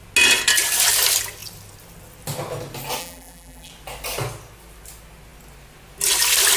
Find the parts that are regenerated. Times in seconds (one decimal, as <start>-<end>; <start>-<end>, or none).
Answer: 3.0-3.7